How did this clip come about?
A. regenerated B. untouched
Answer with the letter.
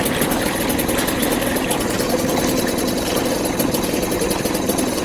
B